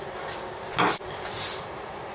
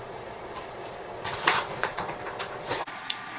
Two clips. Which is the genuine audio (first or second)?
first